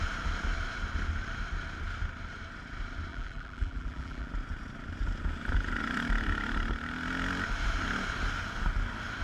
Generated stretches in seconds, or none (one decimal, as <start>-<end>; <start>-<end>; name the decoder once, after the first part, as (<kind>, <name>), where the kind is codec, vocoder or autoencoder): 3.1-4.3 (vocoder, BigVGAN v2)